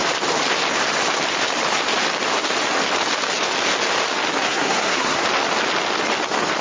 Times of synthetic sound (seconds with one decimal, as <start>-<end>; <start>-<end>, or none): 4.4-5.2